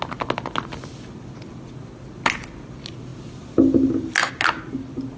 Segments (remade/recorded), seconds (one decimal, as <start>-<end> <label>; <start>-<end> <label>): 0.0-5.2 recorded